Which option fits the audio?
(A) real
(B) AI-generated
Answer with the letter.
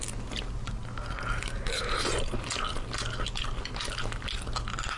A